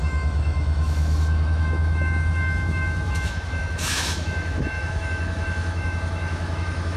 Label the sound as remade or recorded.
remade